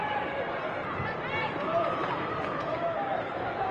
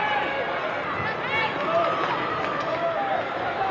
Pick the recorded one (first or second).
second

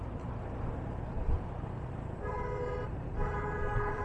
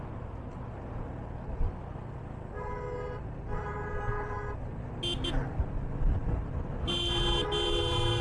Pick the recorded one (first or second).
second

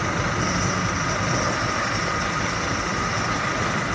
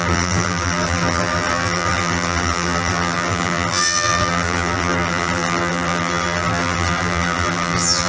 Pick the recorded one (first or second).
first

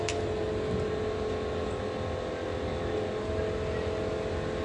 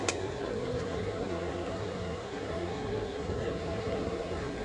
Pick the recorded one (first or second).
first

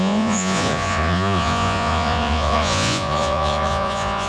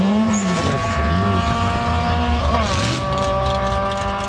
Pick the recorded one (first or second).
second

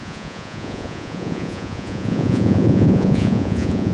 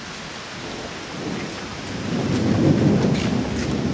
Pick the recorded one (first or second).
second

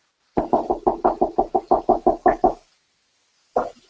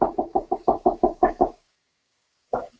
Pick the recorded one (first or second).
first